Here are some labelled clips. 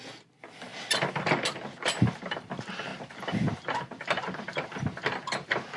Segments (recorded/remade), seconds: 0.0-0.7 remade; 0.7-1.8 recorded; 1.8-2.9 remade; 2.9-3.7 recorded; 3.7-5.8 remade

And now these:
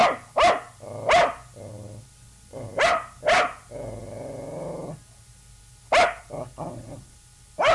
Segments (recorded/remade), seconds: 0.0-7.7 recorded

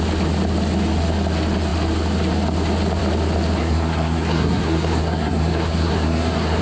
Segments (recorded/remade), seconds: 0.0-3.6 recorded; 3.6-6.6 remade

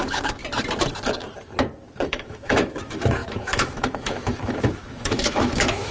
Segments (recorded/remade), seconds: 0.0-0.4 remade; 0.4-2.1 recorded; 2.1-5.9 remade

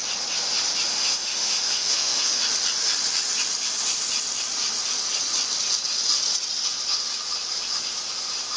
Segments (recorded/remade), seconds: 0.0-0.9 recorded; 0.9-2.4 remade; 2.4-8.6 recorded